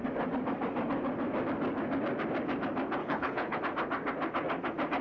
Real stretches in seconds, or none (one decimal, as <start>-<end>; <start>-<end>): 0.0-3.0; 3.6-5.0